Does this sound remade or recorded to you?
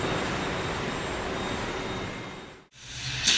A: recorded